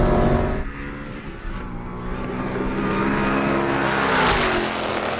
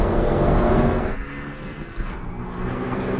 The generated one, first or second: second